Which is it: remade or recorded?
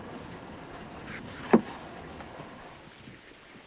recorded